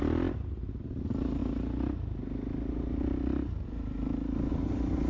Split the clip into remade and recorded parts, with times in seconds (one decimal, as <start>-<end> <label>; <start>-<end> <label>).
0.0-5.1 recorded